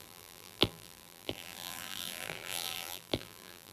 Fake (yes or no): yes